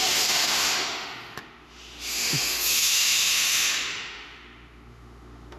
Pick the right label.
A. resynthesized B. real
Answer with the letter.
A